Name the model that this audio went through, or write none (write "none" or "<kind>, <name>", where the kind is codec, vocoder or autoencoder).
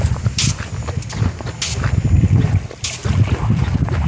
none